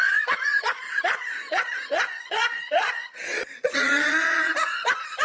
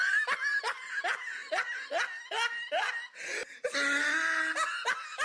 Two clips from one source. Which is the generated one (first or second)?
first